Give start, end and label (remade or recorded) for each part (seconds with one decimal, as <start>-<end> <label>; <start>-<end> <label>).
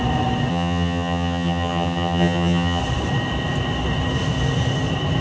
0.0-0.5 recorded; 0.5-2.8 remade; 2.8-5.2 recorded